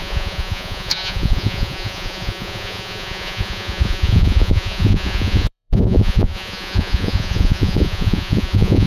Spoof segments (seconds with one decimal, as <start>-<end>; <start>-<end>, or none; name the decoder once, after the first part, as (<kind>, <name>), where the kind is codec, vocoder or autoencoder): 0.0-8.9 (vocoder, Vocos)